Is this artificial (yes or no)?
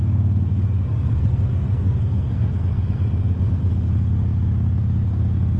yes